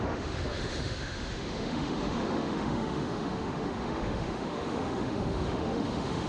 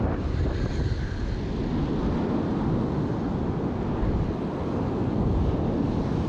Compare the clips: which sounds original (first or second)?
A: second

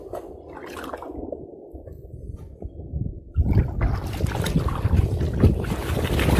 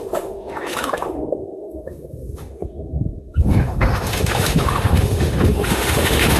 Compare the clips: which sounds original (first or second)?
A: first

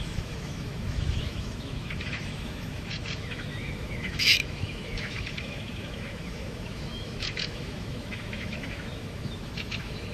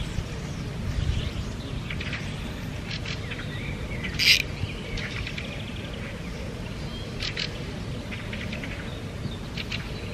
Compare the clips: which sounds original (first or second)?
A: second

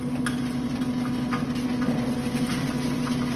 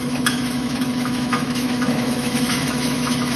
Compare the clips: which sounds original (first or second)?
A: first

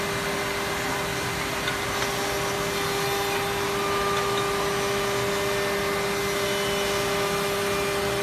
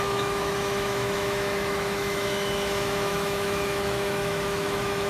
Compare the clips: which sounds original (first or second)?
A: first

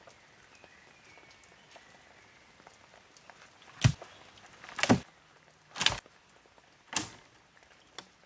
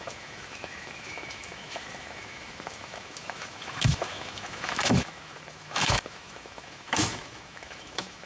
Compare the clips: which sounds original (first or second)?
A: first